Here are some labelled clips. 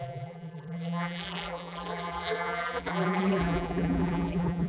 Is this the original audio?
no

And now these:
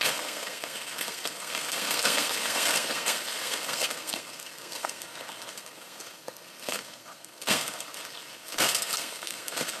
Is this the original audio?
no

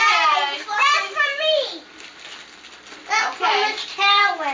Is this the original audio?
yes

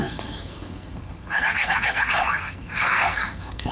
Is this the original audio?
no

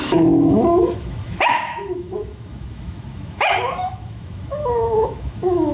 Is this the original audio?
no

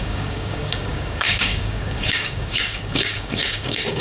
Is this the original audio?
no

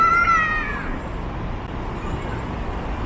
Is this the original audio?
yes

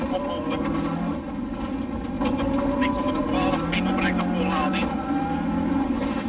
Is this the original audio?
yes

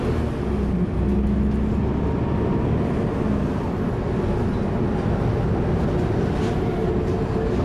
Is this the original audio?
yes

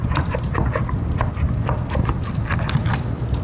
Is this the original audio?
yes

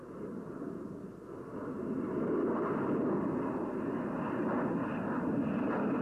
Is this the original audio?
yes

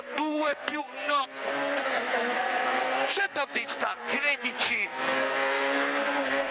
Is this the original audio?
no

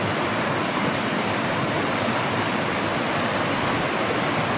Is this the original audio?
yes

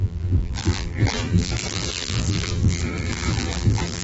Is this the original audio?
no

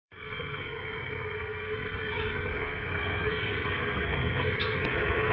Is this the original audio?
no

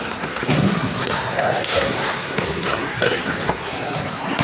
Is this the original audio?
no